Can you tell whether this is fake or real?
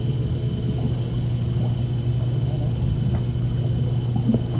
real